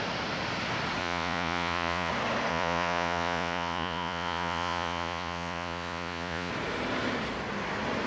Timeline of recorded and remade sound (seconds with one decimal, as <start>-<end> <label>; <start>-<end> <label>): 0.0-1.0 recorded; 1.0-2.1 remade; 2.1-2.5 recorded; 2.5-6.5 remade; 6.5-8.1 recorded